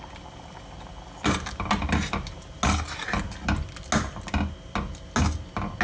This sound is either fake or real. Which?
real